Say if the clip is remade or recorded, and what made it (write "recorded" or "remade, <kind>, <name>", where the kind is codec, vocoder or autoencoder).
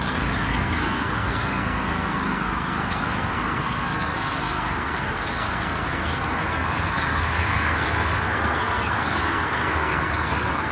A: remade, codec, SNAC